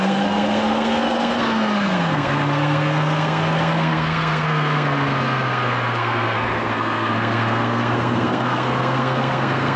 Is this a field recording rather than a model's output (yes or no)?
no